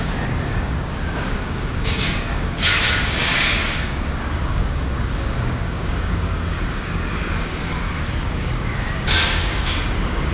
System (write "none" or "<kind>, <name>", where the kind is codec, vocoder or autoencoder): codec, DAC